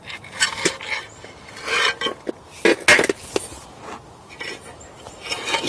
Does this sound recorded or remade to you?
recorded